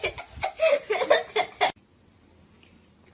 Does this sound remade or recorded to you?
recorded